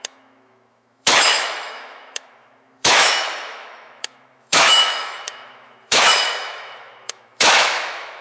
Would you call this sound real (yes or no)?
no